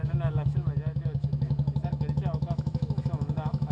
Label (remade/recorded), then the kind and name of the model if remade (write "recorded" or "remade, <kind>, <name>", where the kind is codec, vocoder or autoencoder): remade, autoencoder, DAC-VAE